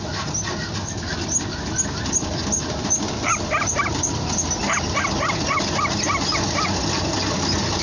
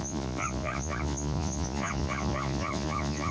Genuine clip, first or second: first